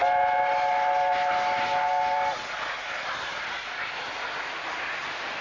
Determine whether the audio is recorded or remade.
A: recorded